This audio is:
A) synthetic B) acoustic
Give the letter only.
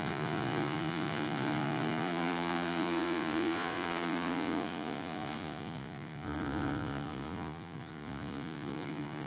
A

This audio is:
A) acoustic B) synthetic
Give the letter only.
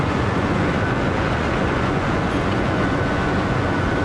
B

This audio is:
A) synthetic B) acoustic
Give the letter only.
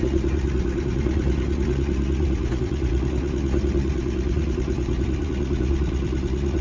A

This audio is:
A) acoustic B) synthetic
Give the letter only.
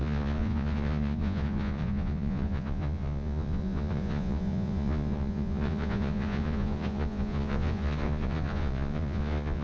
B